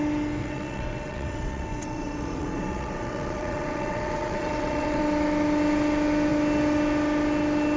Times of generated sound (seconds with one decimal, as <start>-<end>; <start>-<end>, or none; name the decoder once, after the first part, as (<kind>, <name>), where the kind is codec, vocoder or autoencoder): 0.4-5.0 (vocoder, WaveNeXt)